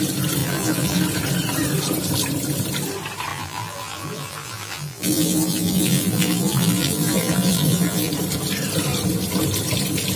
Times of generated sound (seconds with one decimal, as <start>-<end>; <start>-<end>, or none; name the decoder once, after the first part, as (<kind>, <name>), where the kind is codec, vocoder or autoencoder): 0.4-1.0 (vocoder, BigVGAN v2); 3.3-8.1